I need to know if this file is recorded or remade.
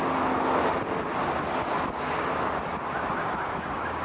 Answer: recorded